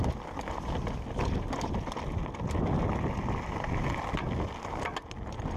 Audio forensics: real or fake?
real